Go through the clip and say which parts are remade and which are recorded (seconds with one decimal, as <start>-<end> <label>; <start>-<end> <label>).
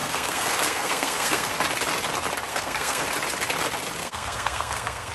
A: 0.0-1.5 remade; 1.5-2.5 recorded; 2.5-3.0 remade; 3.0-4.0 recorded; 4.0-5.1 remade